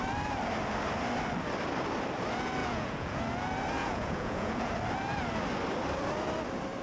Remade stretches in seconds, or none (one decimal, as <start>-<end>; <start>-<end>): 2.6-3.2; 3.8-4.7